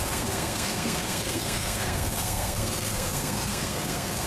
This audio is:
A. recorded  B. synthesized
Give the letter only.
B